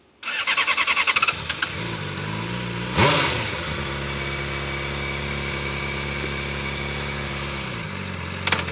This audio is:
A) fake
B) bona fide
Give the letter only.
B